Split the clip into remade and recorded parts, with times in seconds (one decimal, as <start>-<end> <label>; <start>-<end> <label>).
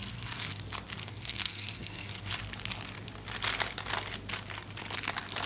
0.0-0.6 remade; 0.6-1.0 recorded; 1.0-2.3 remade; 2.3-5.5 recorded